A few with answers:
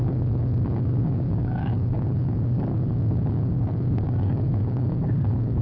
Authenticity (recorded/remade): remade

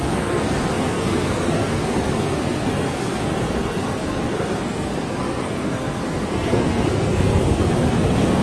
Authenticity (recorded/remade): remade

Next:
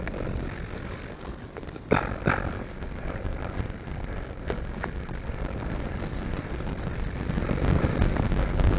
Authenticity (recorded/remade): recorded